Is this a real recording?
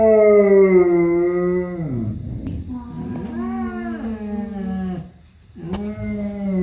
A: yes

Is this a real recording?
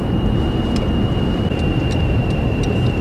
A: yes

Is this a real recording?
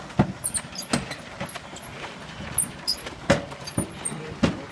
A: yes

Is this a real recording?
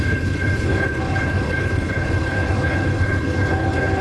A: no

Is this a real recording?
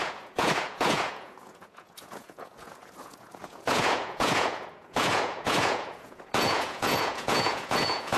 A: no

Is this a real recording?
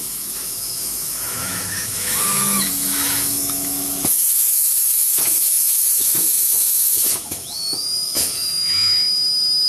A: no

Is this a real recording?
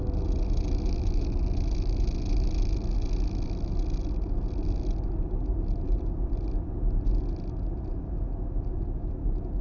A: yes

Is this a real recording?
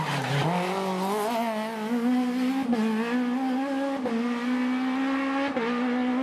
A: yes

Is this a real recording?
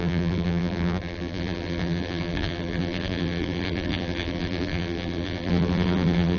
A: no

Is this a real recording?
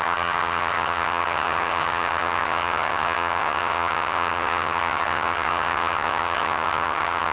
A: no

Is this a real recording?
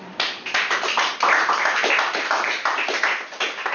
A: yes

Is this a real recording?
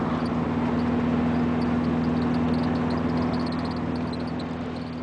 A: yes